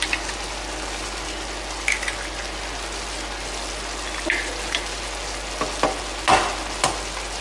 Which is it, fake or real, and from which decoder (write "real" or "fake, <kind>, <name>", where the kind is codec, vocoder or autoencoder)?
real